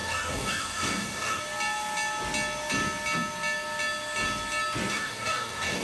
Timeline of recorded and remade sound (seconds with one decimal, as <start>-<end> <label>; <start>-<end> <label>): 0.0-1.4 remade; 1.4-4.9 recorded; 4.9-5.8 remade